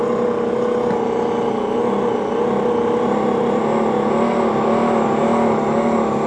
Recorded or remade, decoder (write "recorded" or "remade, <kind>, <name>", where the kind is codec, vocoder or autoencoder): recorded